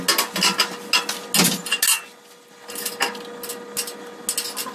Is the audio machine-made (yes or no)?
no